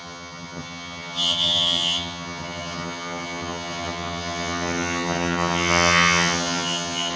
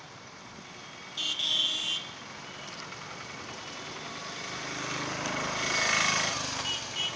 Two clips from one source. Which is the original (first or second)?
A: second